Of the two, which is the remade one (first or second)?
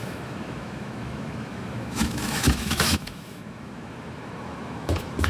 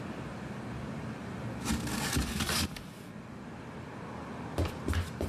first